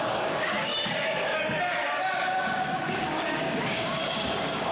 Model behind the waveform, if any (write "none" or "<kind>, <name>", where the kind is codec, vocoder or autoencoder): codec, DAC